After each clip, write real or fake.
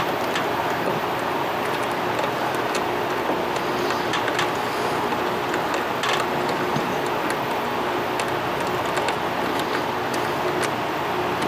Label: real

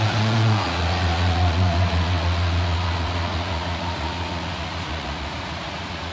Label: fake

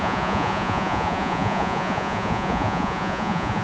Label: fake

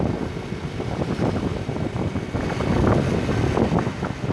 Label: real